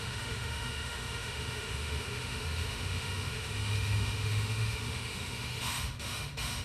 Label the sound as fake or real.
fake